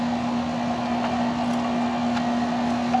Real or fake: real